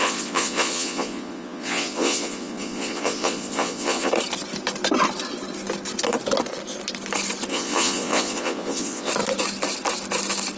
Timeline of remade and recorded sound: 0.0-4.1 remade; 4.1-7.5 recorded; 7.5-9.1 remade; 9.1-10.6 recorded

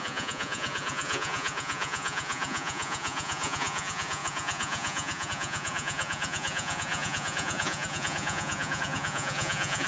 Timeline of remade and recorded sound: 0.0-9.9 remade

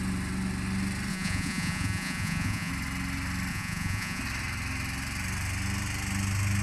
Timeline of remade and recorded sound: 0.0-1.1 recorded; 1.1-2.7 remade; 2.7-3.5 recorded; 3.5-4.2 remade; 4.2-6.6 recorded

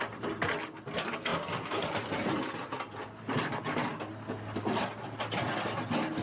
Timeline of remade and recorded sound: 0.0-6.2 recorded